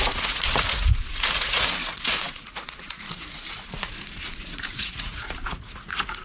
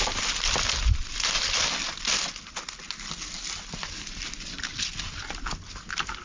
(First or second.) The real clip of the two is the second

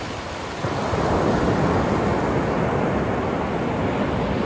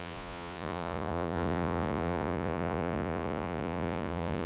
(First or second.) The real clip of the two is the first